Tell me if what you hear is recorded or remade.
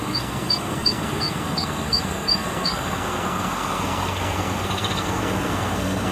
remade